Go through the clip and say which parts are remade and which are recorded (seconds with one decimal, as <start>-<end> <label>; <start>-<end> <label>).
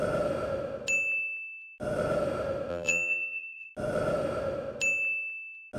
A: 0.0-2.7 recorded; 2.7-3.7 remade; 3.7-5.8 recorded